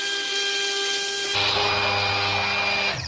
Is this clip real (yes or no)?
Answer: yes